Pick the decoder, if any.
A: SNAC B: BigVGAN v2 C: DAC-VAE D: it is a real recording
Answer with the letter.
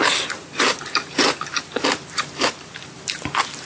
B